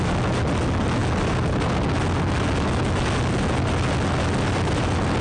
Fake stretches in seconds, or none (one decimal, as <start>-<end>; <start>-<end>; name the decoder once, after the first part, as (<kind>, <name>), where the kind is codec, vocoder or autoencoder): none